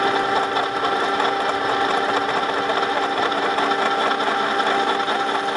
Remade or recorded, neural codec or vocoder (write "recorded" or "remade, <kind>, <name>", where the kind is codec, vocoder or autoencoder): recorded